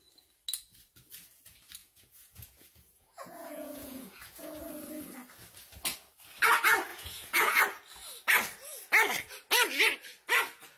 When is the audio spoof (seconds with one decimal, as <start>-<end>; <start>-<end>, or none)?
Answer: 1.8-4.5; 6.9-7.6